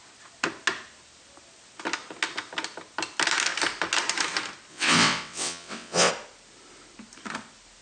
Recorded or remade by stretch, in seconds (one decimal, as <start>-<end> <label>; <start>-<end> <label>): 0.0-4.7 recorded; 4.7-6.1 remade; 6.1-7.8 recorded